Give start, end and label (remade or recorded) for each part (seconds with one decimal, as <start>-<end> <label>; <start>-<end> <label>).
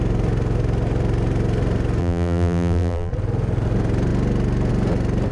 0.0-2.0 recorded; 2.0-3.1 remade; 3.1-5.3 recorded